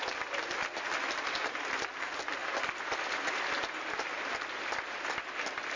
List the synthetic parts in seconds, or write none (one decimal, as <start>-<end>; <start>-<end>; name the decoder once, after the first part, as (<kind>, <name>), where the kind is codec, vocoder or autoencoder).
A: 2.4-5.8 (vocoder, BigVGAN v2)